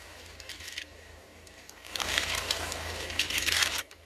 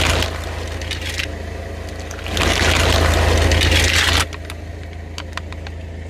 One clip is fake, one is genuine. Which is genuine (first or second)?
second